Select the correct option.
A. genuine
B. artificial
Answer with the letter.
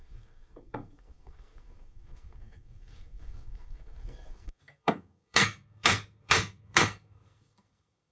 B